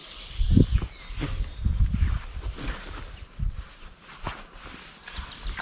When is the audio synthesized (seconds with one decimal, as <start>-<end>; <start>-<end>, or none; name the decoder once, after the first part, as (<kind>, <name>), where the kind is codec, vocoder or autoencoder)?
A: none